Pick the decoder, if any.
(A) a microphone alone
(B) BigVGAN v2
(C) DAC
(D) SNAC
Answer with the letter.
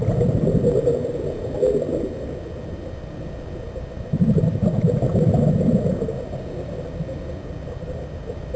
A